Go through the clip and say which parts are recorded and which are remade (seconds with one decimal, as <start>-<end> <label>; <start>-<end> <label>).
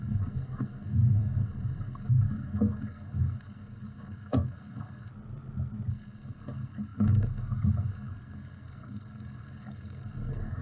0.0-5.1 remade; 5.1-5.9 recorded; 5.9-10.6 remade